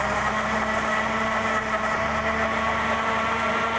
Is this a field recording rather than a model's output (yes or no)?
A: yes